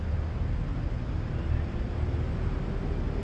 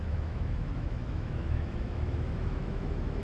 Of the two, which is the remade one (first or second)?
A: second